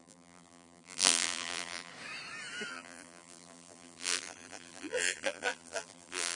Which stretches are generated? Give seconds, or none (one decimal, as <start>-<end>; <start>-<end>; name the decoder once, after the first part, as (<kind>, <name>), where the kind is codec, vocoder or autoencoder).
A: 0.0-1.9 (vocoder, BigVGAN v2); 2.7-6.4